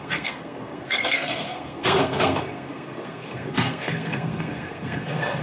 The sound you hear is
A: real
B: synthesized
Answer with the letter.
B